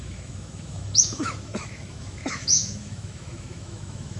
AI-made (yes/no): yes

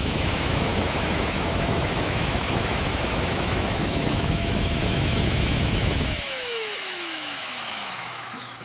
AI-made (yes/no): yes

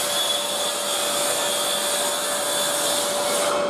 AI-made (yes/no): no